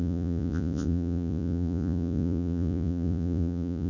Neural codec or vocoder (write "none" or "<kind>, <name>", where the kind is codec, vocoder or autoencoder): vocoder, Vocos